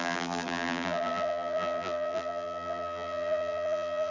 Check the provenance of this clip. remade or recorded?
remade